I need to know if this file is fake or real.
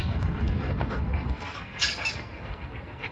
fake